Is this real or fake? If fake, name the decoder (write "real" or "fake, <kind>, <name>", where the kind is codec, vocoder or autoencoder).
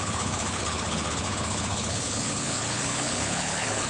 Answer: fake, codec, HILCodec